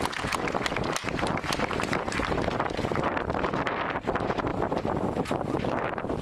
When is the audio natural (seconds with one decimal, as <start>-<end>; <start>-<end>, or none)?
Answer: 0.0-1.0; 1.5-4.5